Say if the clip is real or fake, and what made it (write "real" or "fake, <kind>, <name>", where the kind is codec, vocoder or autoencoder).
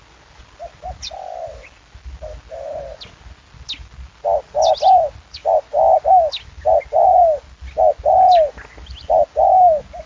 real